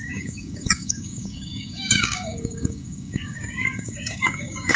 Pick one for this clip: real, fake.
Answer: fake